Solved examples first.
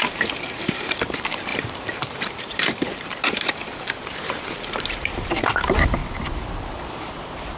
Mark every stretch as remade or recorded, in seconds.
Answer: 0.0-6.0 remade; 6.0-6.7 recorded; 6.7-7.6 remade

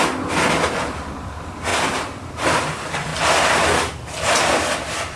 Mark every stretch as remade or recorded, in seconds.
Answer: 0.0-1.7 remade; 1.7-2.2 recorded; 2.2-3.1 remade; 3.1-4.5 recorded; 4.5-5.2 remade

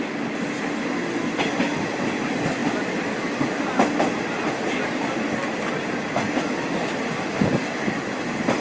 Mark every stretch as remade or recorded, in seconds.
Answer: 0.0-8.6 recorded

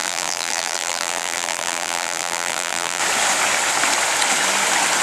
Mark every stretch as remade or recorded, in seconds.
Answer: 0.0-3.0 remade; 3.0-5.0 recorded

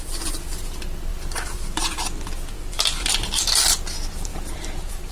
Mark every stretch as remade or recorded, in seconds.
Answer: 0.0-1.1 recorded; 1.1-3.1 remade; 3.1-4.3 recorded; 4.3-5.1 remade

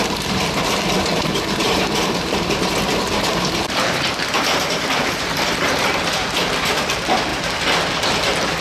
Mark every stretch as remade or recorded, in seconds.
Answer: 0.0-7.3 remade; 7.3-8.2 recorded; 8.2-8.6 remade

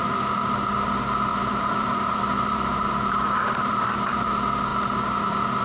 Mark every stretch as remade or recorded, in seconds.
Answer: 0.0-1.3 recorded; 1.3-4.3 remade; 4.3-5.6 recorded